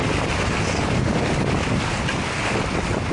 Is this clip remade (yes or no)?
no